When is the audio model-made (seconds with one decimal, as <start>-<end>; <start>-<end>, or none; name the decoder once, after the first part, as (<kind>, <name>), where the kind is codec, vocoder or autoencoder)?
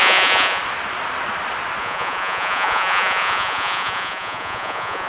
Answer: 0.0-0.6 (vocoder, Vocos); 1.8-5.1